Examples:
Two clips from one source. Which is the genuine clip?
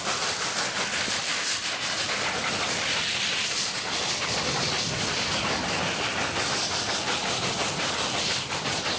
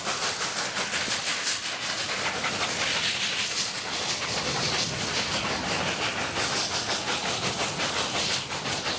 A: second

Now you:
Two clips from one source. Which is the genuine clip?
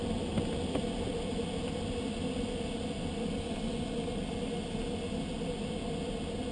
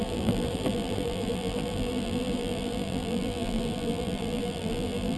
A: first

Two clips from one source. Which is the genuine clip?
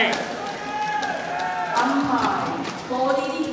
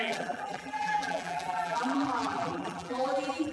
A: first